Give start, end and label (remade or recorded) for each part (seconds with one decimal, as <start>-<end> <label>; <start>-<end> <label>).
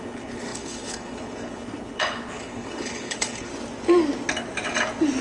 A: 0.0-3.5 remade; 3.5-5.2 recorded